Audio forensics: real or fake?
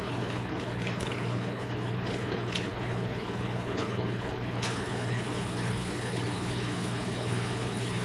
fake